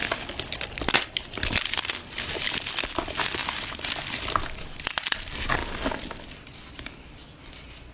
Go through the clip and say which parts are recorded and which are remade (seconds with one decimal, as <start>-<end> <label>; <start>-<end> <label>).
0.0-7.9 recorded